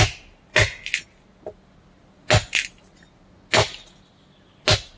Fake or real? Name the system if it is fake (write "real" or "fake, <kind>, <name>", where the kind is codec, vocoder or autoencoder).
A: real